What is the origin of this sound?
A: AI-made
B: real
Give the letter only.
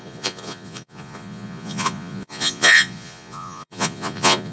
A